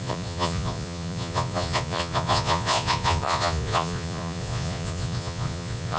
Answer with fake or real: fake